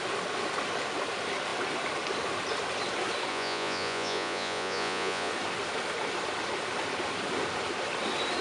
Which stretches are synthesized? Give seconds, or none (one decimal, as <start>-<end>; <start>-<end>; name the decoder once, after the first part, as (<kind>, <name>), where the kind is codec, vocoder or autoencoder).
3.3-5.3 (vocoder, Vocos)